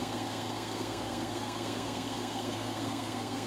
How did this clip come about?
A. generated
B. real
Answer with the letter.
A